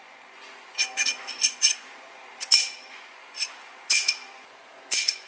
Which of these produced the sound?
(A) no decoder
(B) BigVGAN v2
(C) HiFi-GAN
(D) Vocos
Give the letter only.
D